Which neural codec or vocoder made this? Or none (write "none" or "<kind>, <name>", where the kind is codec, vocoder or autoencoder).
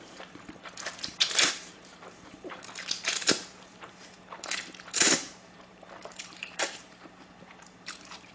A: vocoder, BigVGAN v2